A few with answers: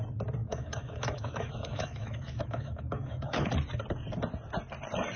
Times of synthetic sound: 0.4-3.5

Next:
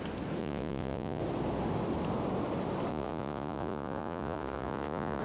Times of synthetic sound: 0.4-1.2; 2.9-5.2

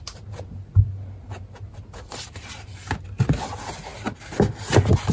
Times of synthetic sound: none

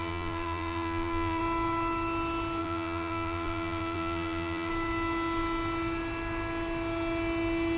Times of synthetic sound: 0.0-1.4; 2.6-4.7

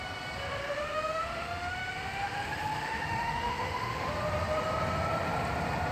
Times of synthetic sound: 0.6-4.1

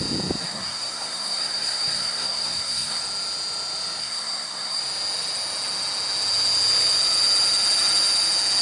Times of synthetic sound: 0.4-3.0; 4.0-4.8